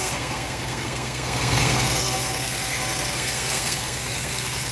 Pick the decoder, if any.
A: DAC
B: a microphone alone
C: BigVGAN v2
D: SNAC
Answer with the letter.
D